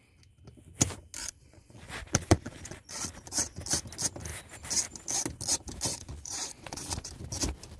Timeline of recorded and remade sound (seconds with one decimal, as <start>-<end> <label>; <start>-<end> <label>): 0.0-1.2 recorded; 1.2-3.6 remade; 3.6-5.9 recorded; 5.9-7.1 remade; 7.1-7.8 recorded